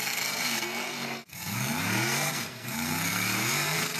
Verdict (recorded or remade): remade